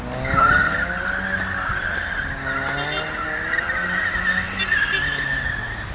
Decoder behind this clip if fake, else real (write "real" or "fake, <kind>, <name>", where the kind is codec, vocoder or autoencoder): real